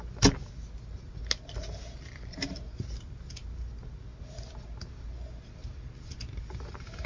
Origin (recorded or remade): recorded